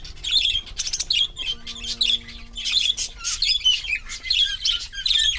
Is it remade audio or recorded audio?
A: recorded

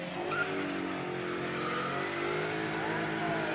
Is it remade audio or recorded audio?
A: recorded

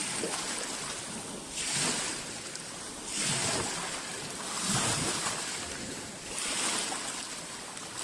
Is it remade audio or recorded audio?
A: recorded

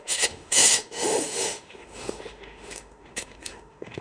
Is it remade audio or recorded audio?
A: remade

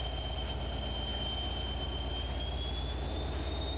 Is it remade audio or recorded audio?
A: recorded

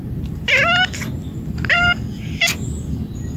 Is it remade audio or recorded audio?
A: recorded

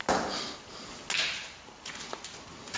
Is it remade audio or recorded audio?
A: recorded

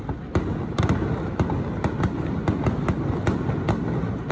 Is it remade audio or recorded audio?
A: recorded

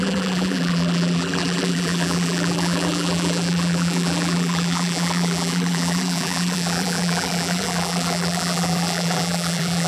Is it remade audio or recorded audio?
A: remade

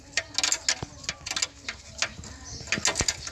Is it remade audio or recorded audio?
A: recorded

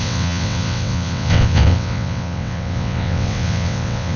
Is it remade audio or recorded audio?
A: remade